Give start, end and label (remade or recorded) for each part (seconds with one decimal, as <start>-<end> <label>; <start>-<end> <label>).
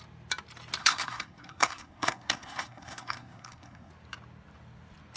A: 0.0-0.8 recorded; 0.8-3.9 remade; 3.9-5.2 recorded